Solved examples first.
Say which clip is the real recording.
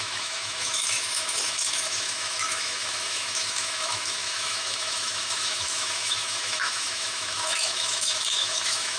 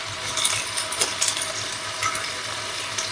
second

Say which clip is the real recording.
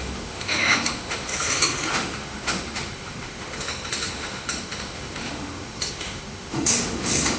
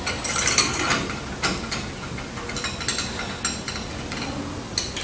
second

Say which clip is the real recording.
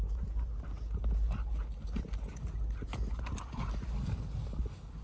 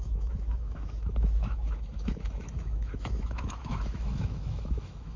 first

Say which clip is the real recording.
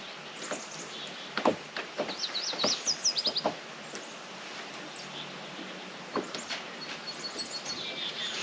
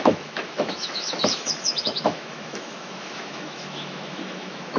first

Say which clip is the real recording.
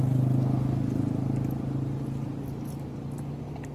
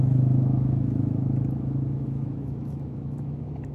first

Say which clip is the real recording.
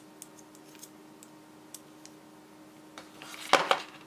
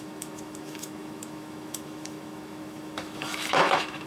first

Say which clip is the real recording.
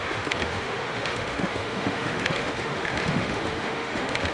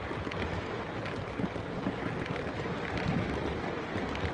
second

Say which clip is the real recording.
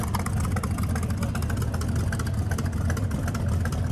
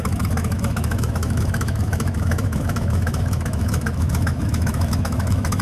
first